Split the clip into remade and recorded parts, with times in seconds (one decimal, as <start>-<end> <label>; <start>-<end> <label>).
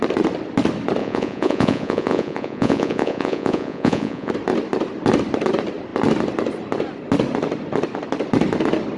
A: 0.0-1.0 recorded; 1.0-4.3 remade; 4.3-9.0 recorded